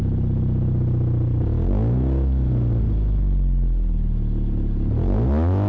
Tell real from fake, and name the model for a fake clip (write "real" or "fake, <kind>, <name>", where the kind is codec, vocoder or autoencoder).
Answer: real